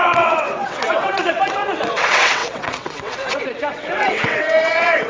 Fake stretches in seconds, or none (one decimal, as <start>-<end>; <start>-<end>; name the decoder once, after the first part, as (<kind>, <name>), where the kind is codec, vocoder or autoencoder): 0.0-5.1 (vocoder, WaveNeXt)

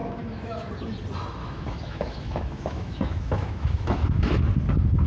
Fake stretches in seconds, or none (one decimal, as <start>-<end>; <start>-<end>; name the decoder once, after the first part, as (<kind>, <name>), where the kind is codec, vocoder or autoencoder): 0.0-0.7 (autoencoder, DAC-VAE); 1.4-4.4

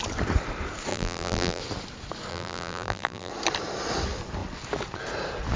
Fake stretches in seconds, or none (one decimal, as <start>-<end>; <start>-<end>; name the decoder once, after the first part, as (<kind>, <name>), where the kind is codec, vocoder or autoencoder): 0.9-1.6 (vocoder, BigVGAN v2); 2.3-3.3

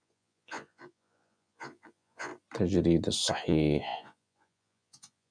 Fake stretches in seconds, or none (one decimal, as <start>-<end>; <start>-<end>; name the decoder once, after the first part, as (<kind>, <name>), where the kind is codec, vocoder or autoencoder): 0.0-2.3 (vocoder, Vocos); 3.3-5.3

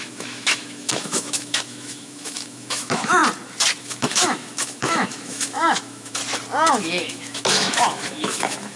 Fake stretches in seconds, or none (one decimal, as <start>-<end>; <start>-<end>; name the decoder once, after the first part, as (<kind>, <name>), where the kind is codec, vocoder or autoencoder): 0.0-3.2 (autoencoder, DAC-VAE); 3.8-6.2; 6.7-8.8

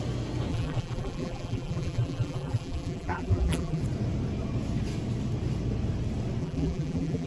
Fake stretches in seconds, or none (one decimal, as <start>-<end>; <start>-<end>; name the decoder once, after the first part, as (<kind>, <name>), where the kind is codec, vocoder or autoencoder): 0.5-3.8 (vocoder, BigVGAN v2); 6.4-7.3